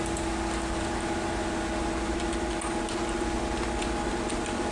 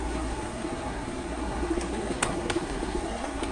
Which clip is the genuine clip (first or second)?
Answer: first